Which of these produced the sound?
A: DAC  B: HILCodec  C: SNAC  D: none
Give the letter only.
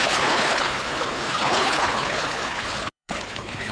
B